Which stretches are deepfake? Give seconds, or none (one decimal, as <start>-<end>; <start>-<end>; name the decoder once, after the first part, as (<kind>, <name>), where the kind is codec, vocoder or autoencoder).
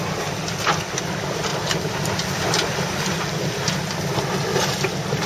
none